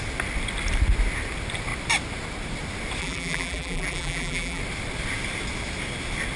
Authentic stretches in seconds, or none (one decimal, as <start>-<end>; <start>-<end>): 0.0-3.0; 4.6-6.4